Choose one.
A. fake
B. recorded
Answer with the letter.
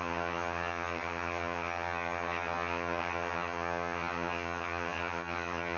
A